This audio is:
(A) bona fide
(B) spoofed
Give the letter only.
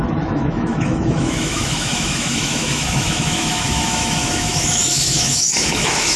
B